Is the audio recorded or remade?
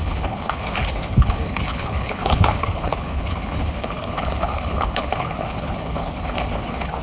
remade